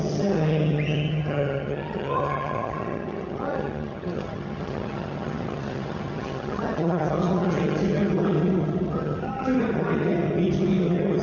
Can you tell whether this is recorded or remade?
remade